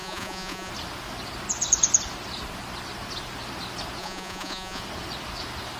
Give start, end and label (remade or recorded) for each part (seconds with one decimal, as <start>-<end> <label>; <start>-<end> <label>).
0.0-0.7 remade; 0.7-4.0 recorded; 4.0-4.8 remade; 4.8-5.8 recorded